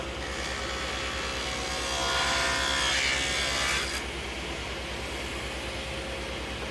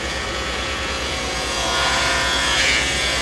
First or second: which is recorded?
first